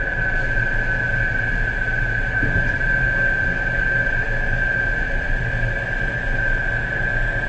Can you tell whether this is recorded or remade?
recorded